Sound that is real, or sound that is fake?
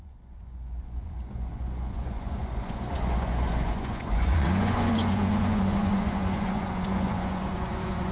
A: fake